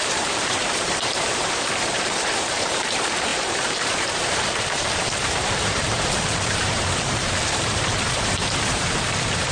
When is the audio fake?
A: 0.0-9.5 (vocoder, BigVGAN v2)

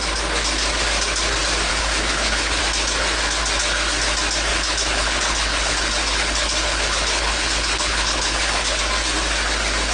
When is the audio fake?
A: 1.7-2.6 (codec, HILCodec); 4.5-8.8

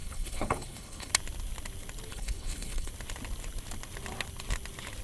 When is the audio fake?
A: 0.0-1.1 (codec, HILCodec); 2.1-2.9